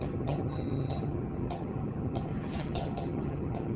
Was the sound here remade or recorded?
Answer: remade